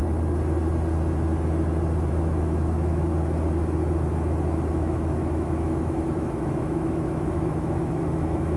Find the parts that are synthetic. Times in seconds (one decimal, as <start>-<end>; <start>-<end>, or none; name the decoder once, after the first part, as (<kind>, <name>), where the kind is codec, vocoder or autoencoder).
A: 2.1-3.1 (autoencoder, DAC-VAE); 4.7-8.6